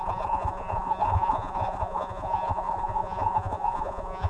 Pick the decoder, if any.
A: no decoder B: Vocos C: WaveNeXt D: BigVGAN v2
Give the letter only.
B